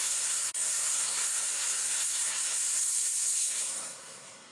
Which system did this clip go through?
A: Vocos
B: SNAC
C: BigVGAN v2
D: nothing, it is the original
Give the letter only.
B